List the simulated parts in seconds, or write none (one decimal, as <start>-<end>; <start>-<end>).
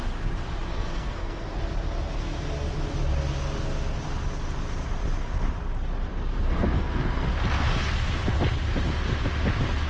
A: 0.7-1.5; 6.1-7.3